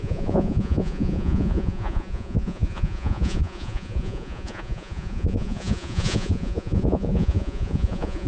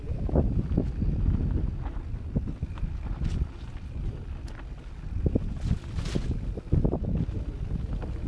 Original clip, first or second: second